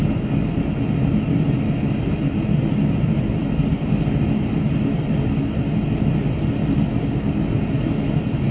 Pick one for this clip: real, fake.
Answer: real